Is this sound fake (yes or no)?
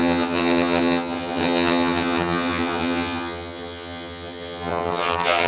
yes